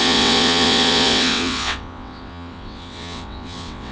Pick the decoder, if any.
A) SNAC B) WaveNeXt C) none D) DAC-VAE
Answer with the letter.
B